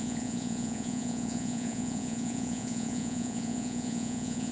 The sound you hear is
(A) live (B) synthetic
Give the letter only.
B